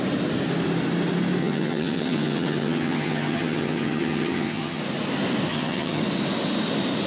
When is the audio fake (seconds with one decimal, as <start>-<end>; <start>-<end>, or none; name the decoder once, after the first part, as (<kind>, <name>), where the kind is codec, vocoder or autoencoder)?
1.4-4.8 (vocoder, HiFi-GAN); 5.5-6.0